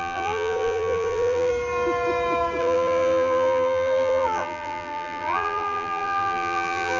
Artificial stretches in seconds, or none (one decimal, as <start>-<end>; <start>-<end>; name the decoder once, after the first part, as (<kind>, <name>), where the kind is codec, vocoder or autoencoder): 0.0-1.5 (vocoder, BigVGAN v2); 2.6-7.0

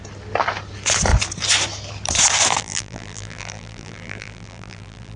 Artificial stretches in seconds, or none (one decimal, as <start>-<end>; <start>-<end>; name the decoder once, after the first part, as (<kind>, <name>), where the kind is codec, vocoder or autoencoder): 2.6-5.2 (vocoder, BigVGAN v2)

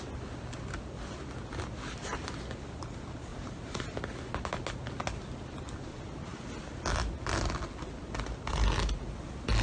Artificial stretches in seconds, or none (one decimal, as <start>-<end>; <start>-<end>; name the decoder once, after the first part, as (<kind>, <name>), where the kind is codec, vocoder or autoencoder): 3.3-4.0 (vocoder, BigVGAN v2)

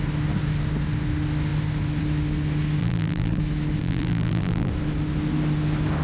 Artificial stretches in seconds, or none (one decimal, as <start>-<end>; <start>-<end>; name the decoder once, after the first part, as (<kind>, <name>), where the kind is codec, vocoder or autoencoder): 2.8-3.4 (vocoder, BigVGAN v2); 3.8-4.7

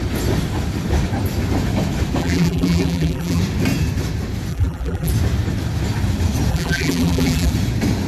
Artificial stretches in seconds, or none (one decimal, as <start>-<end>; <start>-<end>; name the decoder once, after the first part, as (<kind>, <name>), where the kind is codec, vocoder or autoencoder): 2.2-3.4 (vocoder, BigVGAN v2); 4.5-5.1; 6.5-7.5

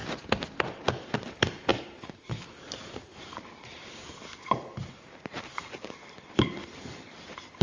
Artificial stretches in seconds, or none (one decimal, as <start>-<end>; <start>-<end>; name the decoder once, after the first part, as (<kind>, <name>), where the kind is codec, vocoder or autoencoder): 0.6-7.6 (vocoder, BigVGAN v2)

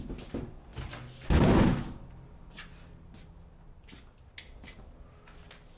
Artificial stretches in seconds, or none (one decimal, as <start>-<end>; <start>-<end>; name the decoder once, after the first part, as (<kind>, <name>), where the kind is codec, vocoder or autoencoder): none

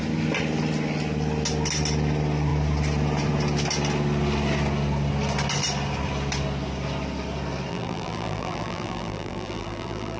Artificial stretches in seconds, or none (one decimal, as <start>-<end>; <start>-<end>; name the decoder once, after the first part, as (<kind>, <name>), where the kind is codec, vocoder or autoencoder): 7.7-10.2 (vocoder, BigVGAN v2)